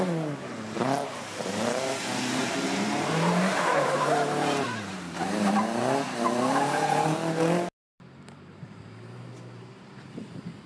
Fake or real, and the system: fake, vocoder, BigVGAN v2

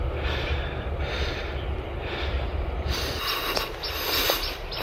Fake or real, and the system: real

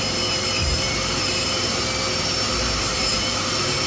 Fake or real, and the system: fake, vocoder, BigVGAN v2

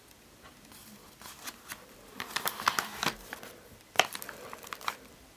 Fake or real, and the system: fake, vocoder, BigVGAN v2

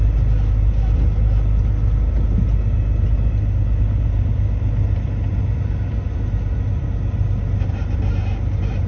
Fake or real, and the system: real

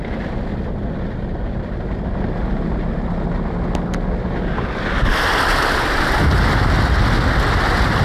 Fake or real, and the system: real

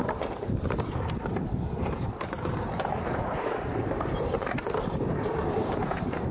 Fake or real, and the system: fake, vocoder, BigVGAN v2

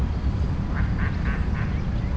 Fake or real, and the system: fake, vocoder, BigVGAN v2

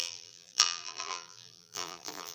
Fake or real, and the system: fake, vocoder, BigVGAN v2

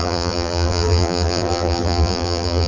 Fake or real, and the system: fake, vocoder, BigVGAN v2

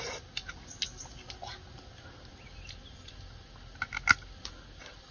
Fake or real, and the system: real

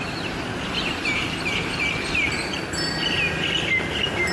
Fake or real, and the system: real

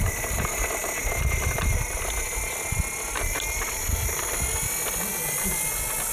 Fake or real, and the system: real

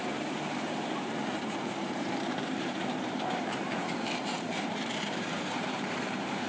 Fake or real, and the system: fake, vocoder, BigVGAN v2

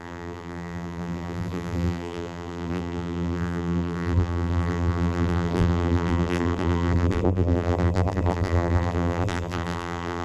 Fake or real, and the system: fake, vocoder, BigVGAN v2